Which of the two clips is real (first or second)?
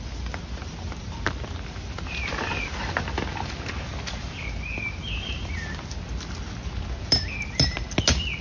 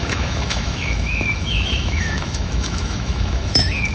first